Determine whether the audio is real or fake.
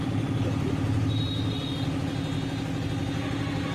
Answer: real